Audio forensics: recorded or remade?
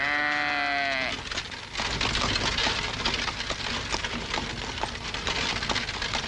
recorded